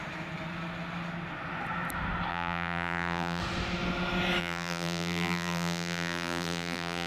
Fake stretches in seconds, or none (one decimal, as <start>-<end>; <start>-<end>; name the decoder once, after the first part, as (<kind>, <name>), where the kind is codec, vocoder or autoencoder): 2.3-3.4 (vocoder, BigVGAN v2); 4.4-7.1